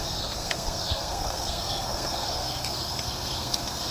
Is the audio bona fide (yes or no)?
no